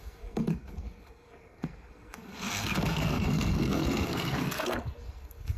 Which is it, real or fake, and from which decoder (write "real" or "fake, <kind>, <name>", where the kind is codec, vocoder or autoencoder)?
fake, codec, SNAC